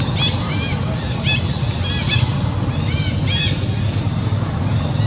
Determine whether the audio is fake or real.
real